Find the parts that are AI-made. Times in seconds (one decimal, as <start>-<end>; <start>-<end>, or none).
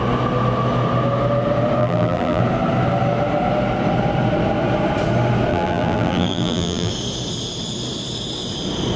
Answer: 1.8-2.4; 5.5-6.9